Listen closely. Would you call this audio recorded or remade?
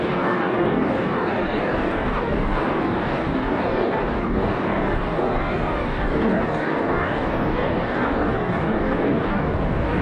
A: remade